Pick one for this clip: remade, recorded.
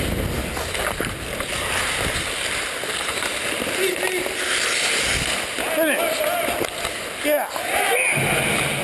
recorded